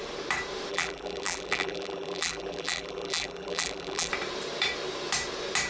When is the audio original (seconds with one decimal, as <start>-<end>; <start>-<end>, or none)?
0.0-0.7; 4.1-5.7